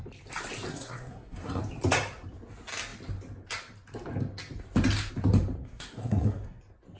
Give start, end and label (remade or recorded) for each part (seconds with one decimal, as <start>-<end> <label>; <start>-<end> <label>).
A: 0.0-0.7 recorded; 0.7-1.6 remade; 1.6-5.6 recorded; 5.6-6.6 remade; 6.6-7.0 recorded